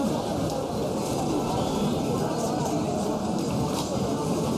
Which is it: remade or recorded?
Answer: recorded